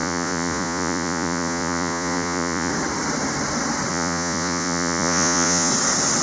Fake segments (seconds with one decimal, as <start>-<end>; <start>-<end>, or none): 0.0-2.7; 3.9-5.7